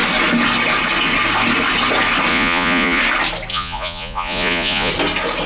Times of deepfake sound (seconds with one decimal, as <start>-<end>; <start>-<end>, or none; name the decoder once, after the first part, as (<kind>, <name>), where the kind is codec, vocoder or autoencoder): 2.3-3.0 (vocoder, Vocos); 3.5-4.9